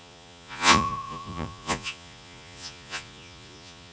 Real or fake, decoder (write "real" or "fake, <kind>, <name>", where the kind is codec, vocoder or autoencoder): fake, vocoder, Vocos